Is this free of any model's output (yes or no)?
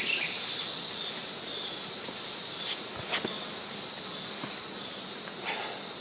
yes